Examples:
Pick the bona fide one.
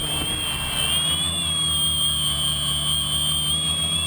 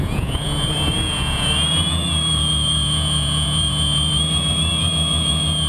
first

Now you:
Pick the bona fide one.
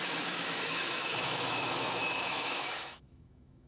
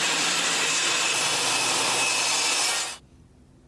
second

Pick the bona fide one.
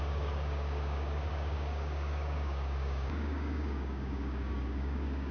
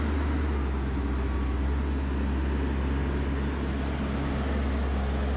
second